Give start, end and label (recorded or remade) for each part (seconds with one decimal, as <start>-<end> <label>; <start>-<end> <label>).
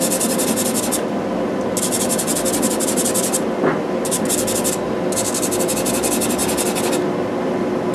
0.0-7.9 recorded